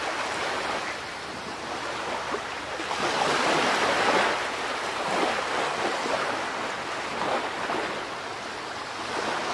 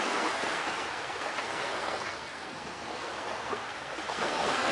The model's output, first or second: second